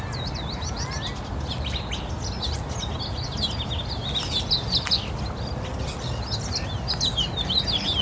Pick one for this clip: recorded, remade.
recorded